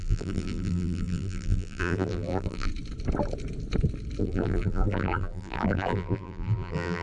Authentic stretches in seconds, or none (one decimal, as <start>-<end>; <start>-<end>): 2.7-4.2